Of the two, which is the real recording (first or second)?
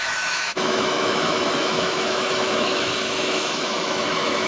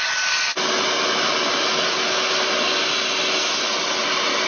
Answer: second